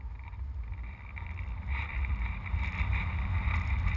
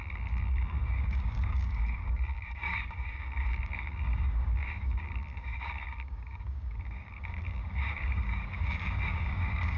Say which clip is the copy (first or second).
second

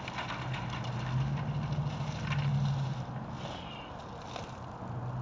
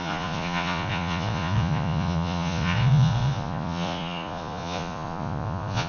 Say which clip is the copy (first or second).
second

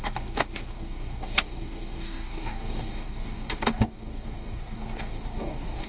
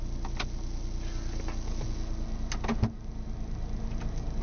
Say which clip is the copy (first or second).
first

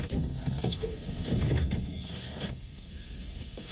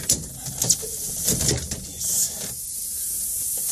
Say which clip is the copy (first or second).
first